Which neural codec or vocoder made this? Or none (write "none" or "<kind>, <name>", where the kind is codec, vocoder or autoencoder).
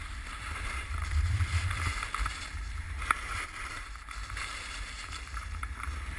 vocoder, BigVGAN v2